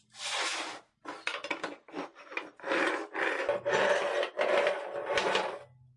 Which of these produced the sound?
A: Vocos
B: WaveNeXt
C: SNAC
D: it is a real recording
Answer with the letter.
D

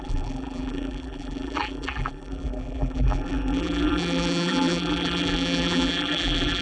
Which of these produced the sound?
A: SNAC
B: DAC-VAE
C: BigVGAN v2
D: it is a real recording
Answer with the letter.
C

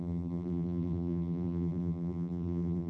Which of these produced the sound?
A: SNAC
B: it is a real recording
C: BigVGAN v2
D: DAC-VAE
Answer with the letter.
C